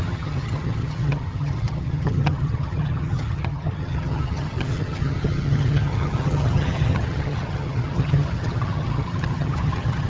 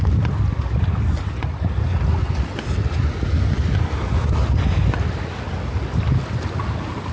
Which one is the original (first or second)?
second